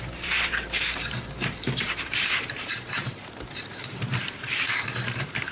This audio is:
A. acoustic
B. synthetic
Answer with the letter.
B